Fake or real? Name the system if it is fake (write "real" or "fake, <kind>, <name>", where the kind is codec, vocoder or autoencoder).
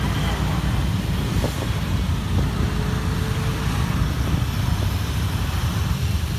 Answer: real